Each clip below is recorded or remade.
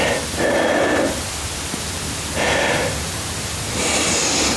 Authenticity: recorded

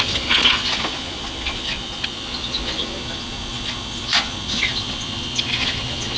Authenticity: remade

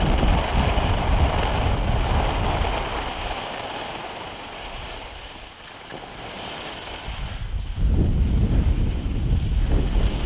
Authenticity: recorded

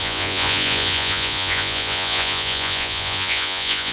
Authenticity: remade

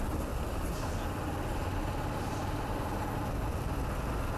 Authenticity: recorded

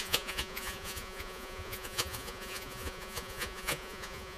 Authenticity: remade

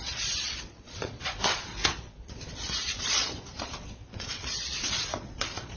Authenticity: remade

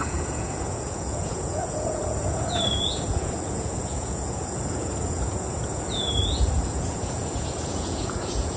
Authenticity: remade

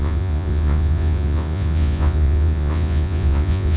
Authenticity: remade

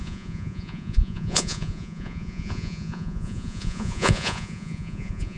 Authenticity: remade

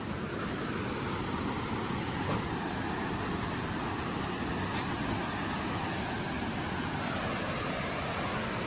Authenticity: recorded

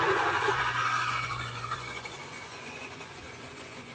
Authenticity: remade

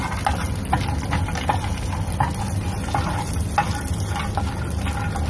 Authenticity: recorded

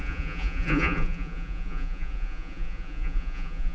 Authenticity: remade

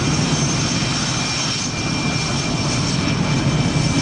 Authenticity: recorded